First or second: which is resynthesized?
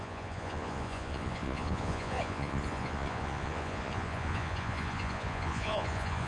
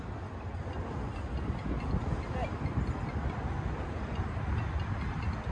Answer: first